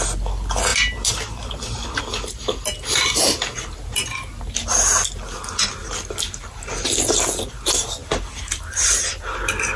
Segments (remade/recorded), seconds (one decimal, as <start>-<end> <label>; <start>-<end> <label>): 0.0-9.8 recorded